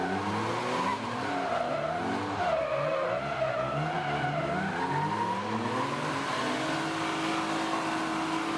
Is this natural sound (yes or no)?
yes